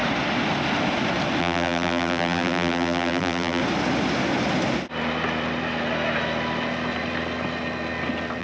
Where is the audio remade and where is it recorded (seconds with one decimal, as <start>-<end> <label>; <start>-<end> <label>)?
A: 0.0-1.4 recorded; 1.4-3.6 remade; 3.6-8.4 recorded